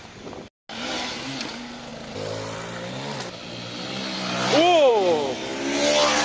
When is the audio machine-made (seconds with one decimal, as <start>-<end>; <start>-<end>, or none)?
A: none

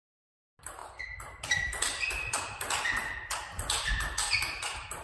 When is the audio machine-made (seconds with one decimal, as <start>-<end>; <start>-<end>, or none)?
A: none

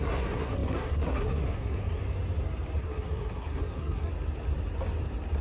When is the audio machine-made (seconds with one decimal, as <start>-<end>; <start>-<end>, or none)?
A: 0.0-2.0; 2.8-4.1